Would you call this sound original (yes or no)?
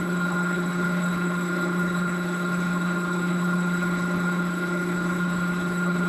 no